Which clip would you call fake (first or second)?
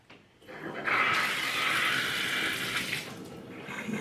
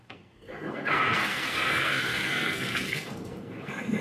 second